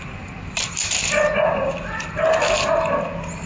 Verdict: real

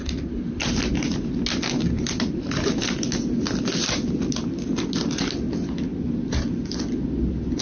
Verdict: real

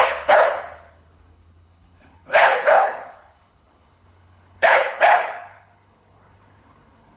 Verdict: fake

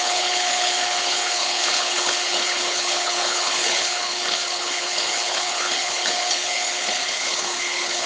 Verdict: fake